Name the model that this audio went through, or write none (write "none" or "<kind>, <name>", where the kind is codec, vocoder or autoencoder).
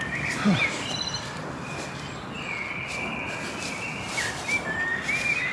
none